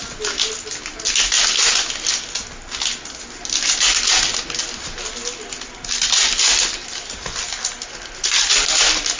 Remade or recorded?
recorded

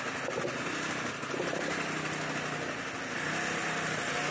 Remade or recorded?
recorded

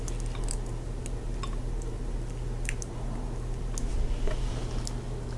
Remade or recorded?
recorded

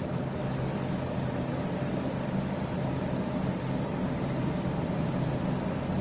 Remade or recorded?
recorded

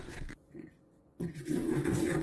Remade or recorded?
remade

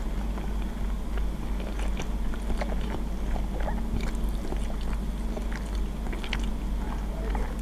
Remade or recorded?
recorded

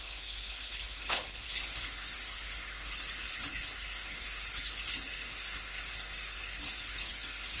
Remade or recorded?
remade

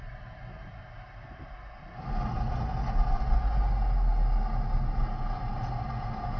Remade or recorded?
recorded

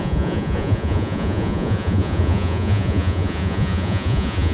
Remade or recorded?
remade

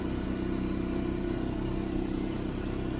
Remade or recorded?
recorded